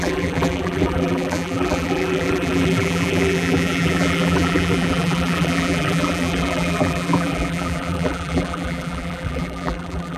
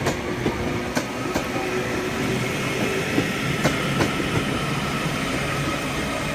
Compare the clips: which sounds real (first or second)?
second